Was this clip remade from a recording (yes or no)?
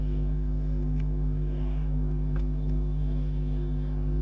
yes